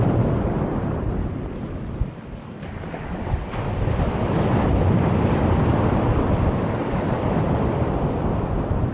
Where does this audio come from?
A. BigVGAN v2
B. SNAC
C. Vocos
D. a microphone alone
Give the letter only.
D